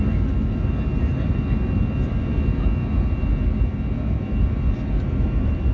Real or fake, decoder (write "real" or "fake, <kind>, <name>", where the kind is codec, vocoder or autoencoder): real